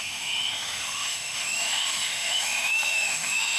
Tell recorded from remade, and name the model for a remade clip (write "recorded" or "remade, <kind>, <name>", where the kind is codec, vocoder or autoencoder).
remade, autoencoder, DAC-VAE